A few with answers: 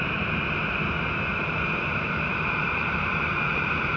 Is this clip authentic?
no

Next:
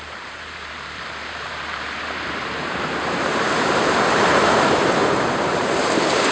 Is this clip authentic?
no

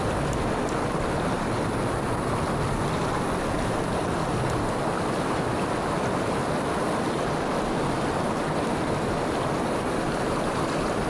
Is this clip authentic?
yes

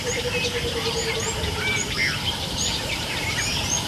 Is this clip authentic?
no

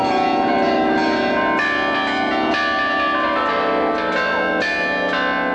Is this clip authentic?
yes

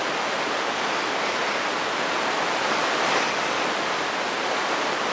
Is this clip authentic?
yes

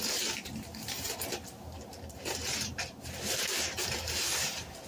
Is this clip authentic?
no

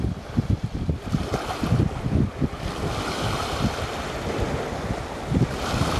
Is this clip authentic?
yes